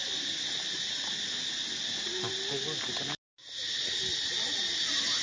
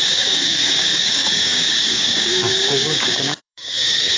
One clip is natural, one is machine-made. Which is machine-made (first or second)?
second